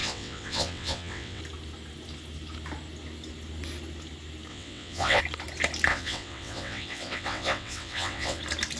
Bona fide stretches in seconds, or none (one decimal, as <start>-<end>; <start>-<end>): 1.4-4.5; 5.2-5.9; 8.4-8.8